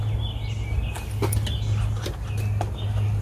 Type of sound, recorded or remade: recorded